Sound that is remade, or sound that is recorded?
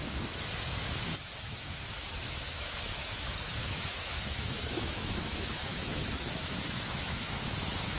remade